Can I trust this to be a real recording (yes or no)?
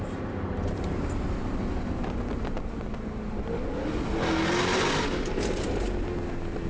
yes